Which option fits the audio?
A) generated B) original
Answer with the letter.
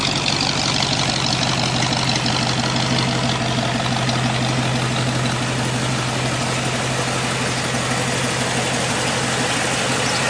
B